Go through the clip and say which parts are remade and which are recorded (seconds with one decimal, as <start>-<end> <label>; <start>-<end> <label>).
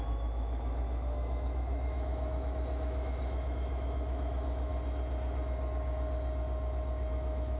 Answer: 0.0-4.7 remade; 4.7-7.1 recorded; 7.1-7.6 remade